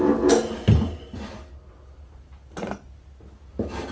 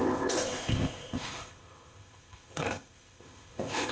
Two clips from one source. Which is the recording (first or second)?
first